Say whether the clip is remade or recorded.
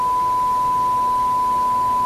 recorded